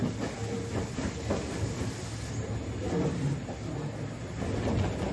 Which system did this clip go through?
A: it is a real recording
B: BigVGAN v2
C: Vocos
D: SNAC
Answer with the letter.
A